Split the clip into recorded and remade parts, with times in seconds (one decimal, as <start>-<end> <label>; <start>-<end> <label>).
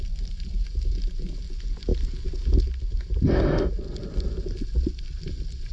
0.0-5.7 recorded